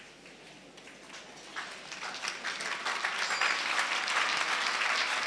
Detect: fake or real real